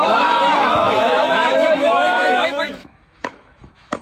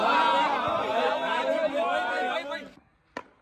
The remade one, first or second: first